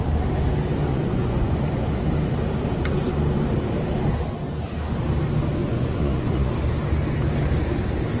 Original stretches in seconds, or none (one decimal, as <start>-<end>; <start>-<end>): 0.0-0.9; 1.9-5.6; 6.5-8.2